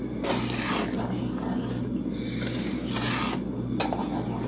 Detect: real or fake real